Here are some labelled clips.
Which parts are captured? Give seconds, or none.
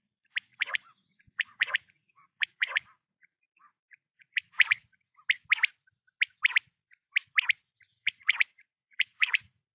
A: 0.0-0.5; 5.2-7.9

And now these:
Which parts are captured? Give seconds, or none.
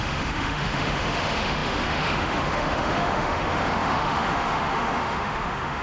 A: none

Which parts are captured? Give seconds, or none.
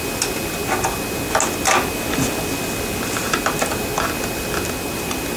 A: 0.0-5.4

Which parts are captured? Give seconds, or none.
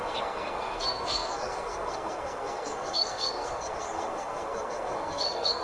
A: none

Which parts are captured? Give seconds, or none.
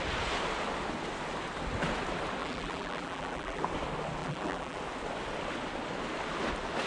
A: 0.0-2.4; 3.6-4.2; 4.8-6.9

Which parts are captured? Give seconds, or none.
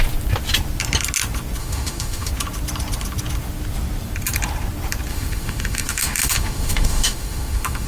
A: 0.0-1.6; 2.3-5.1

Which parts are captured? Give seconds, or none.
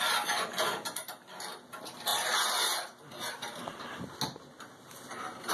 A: 0.0-5.5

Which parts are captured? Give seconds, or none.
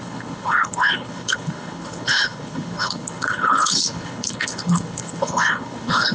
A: none